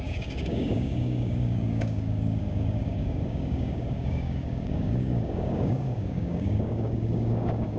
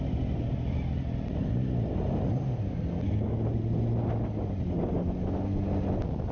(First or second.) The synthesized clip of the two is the first